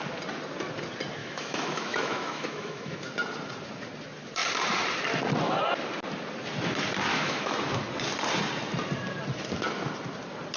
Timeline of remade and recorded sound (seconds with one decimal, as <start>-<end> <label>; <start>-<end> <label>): 0.0-1.2 recorded; 1.2-3.1 remade; 3.1-7.1 recorded; 7.1-7.8 remade; 7.8-10.6 recorded